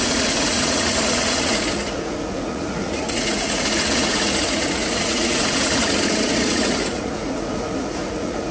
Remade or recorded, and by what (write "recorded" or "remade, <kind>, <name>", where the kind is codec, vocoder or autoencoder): remade, vocoder, Vocos